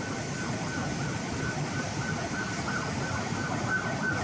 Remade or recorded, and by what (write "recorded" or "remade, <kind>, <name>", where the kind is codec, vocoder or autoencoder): recorded